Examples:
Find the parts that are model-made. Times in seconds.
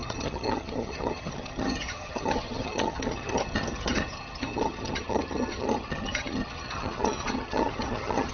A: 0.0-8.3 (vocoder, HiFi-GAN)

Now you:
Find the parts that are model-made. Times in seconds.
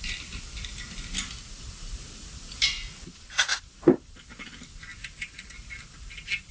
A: none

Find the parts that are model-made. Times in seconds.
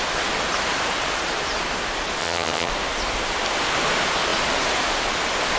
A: 2.2-2.7 (vocoder, HiFi-GAN)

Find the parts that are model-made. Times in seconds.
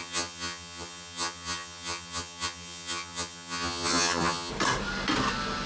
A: 0.0-4.5 (vocoder, HiFi-GAN)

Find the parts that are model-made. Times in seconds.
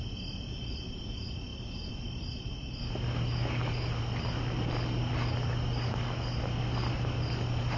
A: none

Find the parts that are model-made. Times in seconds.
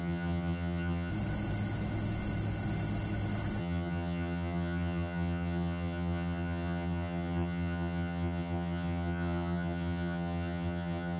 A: 0.0-1.1 (vocoder, HiFi-GAN); 3.6-11.2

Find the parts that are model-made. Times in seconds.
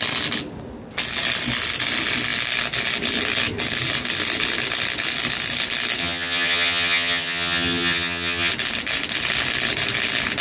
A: 6.0-8.5 (vocoder, HiFi-GAN)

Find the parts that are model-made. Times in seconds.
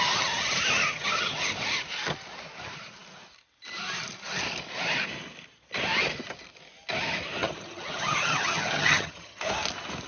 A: 0.8-1.4 (vocoder, HiFi-GAN); 7.4-9.4